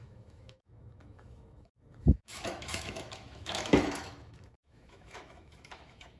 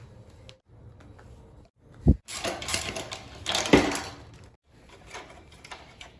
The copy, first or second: first